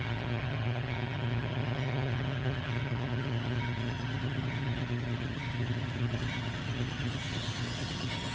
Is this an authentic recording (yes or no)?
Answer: no